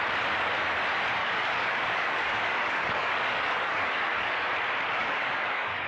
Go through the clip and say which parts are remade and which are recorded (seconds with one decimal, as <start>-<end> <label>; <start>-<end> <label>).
0.0-1.2 recorded; 1.2-4.5 remade; 4.5-5.0 recorded; 5.0-5.9 remade